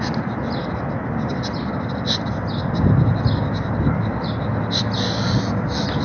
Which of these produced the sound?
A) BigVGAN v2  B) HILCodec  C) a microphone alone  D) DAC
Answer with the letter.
C